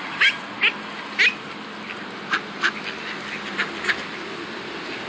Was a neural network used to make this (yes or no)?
no